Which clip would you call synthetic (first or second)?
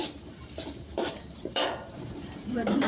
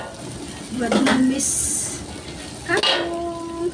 first